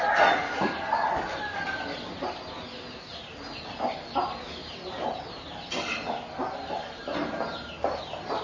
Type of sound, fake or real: real